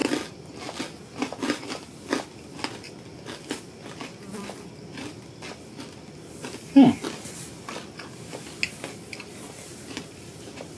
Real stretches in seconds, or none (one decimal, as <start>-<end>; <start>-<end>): 0.0-10.8